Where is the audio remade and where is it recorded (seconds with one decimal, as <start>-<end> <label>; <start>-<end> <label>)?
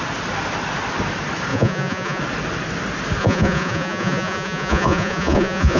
0.0-1.5 recorded; 1.5-2.2 remade; 2.2-3.2 recorded; 3.2-5.8 remade